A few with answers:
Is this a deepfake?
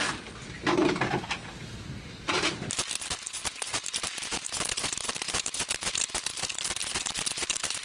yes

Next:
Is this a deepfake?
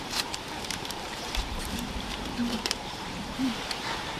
yes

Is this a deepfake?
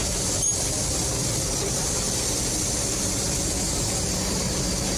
no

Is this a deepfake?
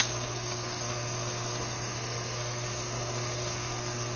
yes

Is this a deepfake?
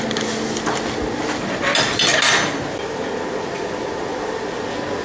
no